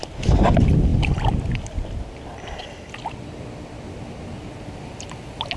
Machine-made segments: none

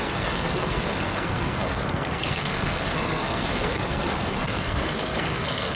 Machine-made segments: 0.0-5.8 (codec, SNAC)

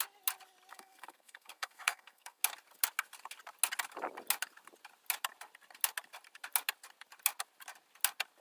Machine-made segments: 0.7-2.4 (codec, SNAC)

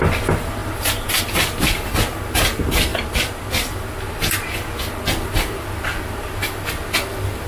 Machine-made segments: none

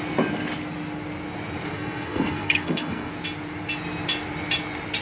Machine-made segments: 1.7-3.1 (codec, SNAC)

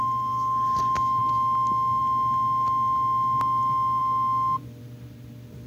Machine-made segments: none

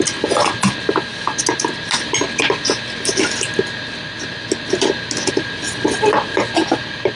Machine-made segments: none